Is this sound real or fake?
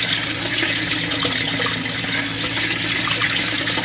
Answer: real